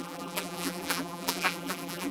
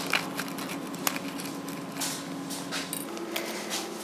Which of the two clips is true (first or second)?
second